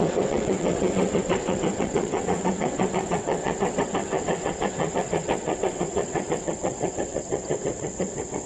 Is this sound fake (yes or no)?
yes